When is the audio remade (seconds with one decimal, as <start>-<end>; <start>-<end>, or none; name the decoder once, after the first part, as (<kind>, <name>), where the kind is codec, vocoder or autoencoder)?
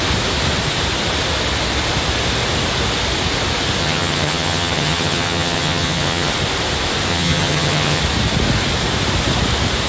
3.8-6.3 (vocoder, HiFi-GAN); 7.1-8.0